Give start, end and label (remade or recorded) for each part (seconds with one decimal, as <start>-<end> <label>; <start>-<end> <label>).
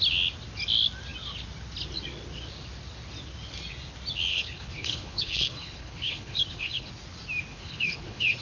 0.0-4.3 recorded; 4.3-6.9 remade; 6.9-7.5 recorded; 7.5-8.4 remade